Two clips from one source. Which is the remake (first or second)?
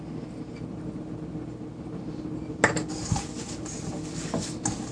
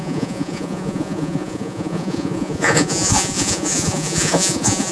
second